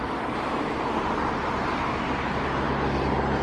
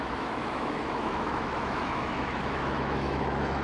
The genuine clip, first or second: first